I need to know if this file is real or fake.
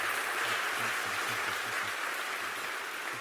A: real